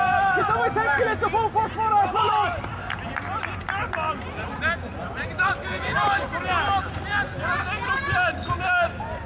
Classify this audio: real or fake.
real